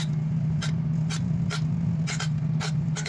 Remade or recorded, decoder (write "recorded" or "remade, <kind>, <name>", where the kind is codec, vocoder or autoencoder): recorded